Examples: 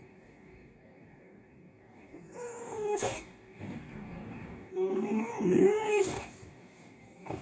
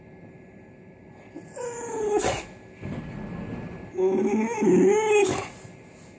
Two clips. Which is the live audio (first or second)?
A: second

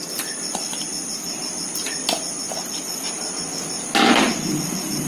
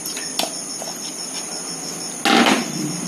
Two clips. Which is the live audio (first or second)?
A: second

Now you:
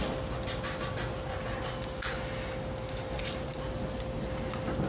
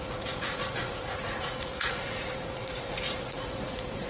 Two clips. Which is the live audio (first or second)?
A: first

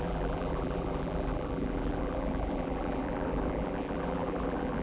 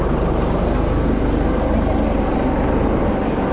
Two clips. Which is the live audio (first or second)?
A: second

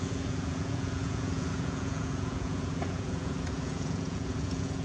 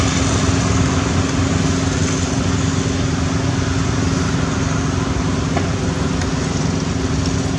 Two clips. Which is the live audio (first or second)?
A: second